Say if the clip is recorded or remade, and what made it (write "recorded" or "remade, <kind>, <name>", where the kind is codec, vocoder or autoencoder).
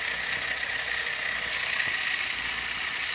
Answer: recorded